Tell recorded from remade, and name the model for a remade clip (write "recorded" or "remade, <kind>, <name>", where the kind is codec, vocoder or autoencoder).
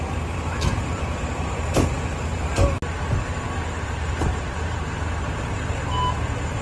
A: recorded